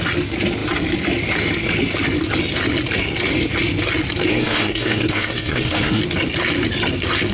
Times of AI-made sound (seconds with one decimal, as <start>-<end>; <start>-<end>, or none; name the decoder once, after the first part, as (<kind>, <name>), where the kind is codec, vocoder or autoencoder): 4.3-6.0 (codec, SNAC)

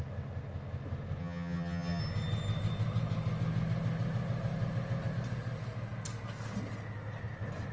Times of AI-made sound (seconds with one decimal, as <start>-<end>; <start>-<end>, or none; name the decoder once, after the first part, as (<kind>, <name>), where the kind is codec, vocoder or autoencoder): 1.2-2.0 (vocoder, HiFi-GAN)